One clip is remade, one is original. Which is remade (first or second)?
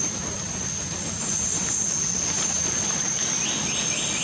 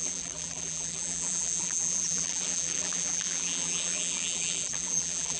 second